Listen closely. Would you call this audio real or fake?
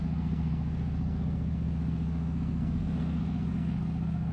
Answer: fake